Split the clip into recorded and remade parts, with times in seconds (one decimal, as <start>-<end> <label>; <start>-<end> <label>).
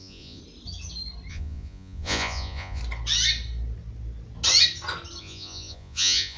0.0-0.4 remade; 0.4-1.3 recorded; 1.3-2.8 remade; 2.8-5.2 recorded; 5.2-6.4 remade